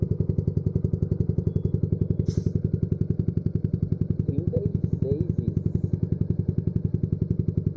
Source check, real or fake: real